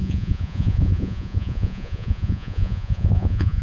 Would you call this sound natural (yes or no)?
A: no